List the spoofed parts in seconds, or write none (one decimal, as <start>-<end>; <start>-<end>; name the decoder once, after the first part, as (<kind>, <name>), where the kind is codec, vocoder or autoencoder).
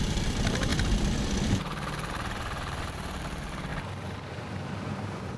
0.0-0.7 (vocoder, BigVGAN v2); 1.5-3.7; 4.3-5.4